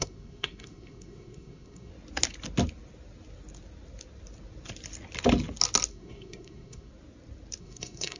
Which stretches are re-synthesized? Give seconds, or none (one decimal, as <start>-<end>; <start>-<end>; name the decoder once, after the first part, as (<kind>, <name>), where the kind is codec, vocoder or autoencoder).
0.0-1.9 (codec, SNAC); 5.9-6.9; 7.6-8.2